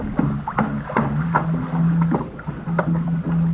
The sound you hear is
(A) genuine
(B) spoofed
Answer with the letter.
A